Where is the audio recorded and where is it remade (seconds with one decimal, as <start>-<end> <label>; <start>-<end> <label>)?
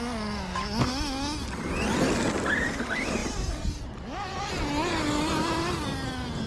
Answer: 0.0-6.5 recorded